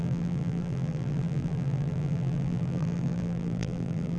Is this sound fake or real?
fake